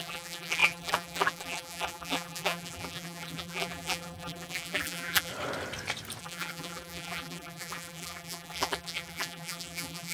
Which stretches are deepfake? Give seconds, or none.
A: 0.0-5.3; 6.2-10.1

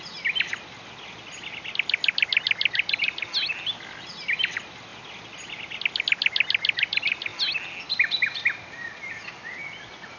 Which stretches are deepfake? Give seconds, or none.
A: none

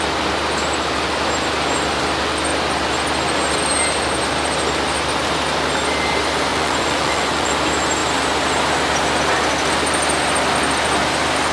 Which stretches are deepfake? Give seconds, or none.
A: 6.5-7.5

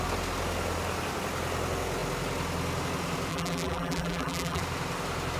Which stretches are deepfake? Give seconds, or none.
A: 3.3-4.6

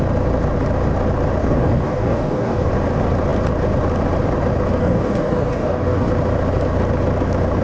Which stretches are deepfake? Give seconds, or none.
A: 1.4-2.7; 4.8-6.1

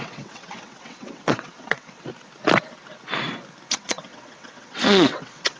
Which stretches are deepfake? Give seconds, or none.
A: 0.0-2.1; 3.8-5.6